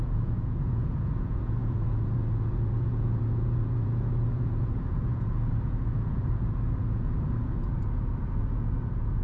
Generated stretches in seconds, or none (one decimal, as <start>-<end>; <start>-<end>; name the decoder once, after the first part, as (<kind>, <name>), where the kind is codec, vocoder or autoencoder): 0.0-9.2 (vocoder, Vocos)